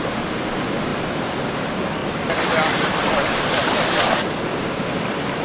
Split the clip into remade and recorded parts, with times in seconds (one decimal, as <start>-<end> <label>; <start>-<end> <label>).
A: 0.0-5.4 recorded